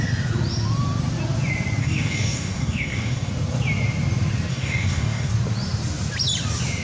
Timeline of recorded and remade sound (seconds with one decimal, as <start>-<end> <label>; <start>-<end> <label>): 0.0-1.8 recorded; 1.8-3.3 remade; 3.3-4.5 recorded; 4.5-5.3 remade; 5.3-6.8 recorded